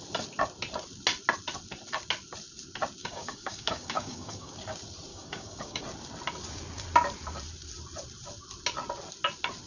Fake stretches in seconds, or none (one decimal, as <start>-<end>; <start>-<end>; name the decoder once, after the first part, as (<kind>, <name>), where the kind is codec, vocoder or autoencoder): 3.0-4.5 (codec, DAC); 5.1-5.8

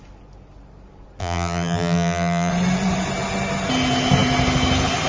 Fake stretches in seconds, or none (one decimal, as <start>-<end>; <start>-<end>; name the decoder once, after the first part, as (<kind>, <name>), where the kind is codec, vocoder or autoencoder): 1.2-2.5 (vocoder, BigVGAN v2)

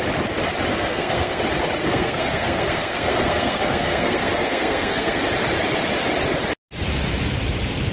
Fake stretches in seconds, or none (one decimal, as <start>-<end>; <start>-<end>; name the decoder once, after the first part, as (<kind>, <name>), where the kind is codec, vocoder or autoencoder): 0.7-1.4 (codec, SNAC); 1.8-5.2